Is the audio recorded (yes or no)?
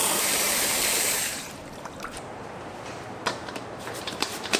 no